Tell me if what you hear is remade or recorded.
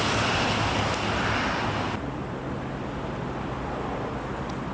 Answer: recorded